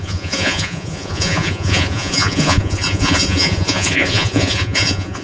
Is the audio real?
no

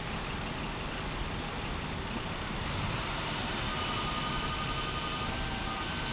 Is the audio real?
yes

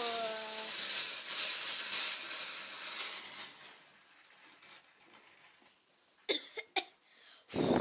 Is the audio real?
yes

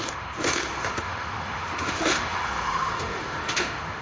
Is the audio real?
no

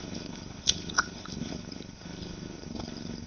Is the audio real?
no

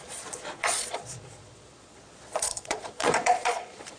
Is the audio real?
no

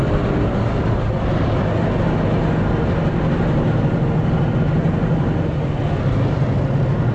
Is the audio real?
yes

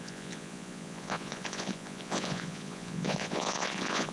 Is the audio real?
no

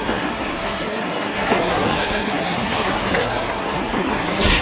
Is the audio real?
no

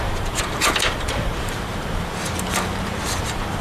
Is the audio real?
no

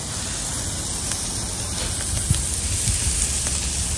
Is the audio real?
yes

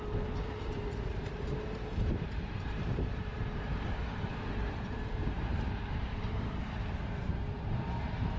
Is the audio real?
no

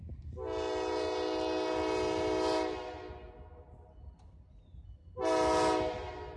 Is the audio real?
yes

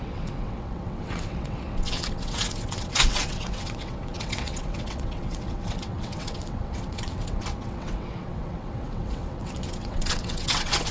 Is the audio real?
no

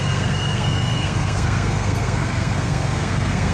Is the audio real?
no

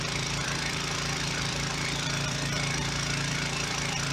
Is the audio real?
no